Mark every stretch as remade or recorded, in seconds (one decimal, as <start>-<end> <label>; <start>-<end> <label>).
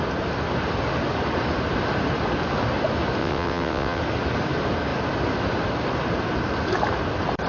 0.0-3.2 recorded; 3.2-4.0 remade; 4.0-7.5 recorded